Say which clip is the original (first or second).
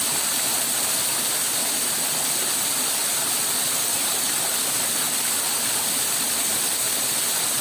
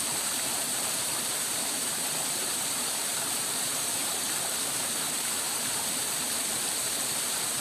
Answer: first